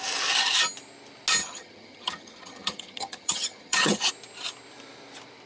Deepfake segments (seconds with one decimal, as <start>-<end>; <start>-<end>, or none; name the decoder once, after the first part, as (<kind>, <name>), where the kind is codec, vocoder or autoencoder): 1.4-4.1 (vocoder, HiFi-GAN)